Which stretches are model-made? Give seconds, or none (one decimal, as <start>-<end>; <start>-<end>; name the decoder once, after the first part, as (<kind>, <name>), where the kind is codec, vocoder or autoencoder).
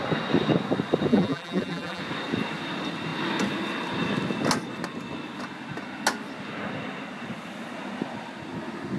1.1-2.0 (vocoder, BigVGAN v2)